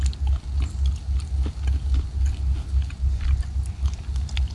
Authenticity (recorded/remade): recorded